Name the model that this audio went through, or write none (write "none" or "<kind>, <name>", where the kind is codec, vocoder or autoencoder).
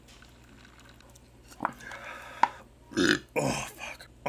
none